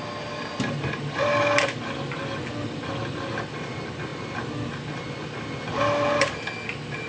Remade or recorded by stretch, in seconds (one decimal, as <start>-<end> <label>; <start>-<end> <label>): 0.0-7.1 recorded